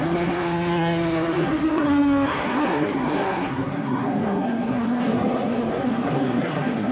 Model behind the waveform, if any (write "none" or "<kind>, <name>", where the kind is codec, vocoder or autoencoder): codec, SNAC